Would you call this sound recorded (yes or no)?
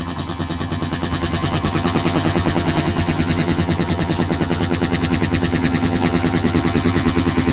no